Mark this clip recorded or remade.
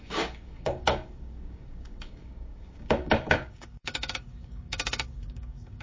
remade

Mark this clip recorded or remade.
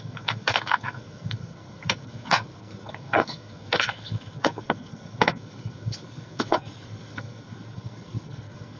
remade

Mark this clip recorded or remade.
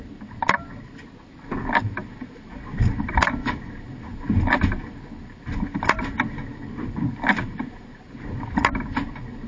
recorded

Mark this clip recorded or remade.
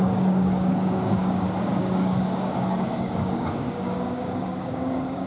remade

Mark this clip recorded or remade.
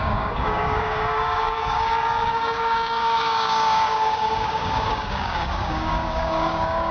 remade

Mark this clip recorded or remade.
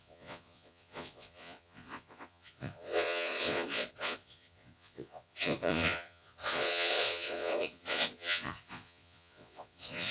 remade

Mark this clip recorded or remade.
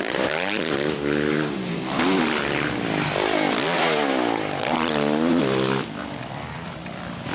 recorded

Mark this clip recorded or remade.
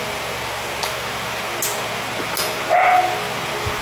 recorded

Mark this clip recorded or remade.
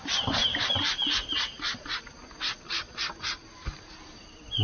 recorded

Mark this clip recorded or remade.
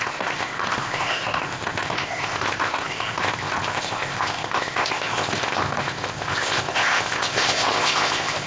remade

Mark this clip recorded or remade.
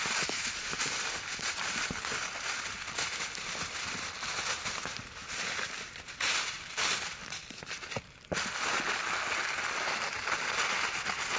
recorded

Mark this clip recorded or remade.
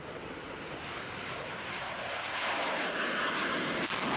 recorded